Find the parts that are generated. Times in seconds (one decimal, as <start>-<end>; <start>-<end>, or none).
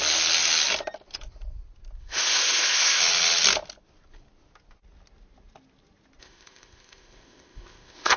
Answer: 2.0-3.0; 6.2-8.2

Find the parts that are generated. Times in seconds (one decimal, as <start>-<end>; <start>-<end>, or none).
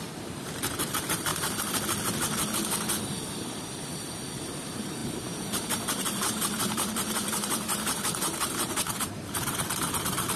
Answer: 0.0-1.3; 2.9-10.4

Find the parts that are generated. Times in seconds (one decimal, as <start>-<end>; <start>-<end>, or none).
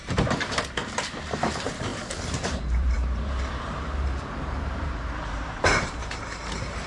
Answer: 0.0-6.9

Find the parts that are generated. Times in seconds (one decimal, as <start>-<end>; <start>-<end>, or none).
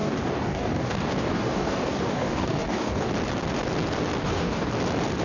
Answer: 0.0-3.1; 4.2-4.7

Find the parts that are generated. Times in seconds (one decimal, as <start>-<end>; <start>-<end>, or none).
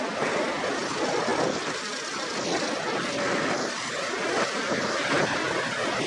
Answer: none